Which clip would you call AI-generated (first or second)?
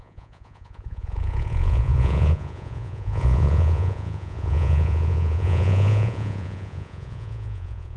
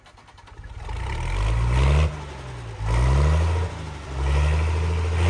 first